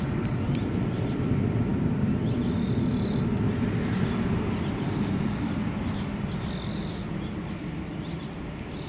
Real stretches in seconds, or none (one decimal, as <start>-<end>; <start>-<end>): 0.0-8.9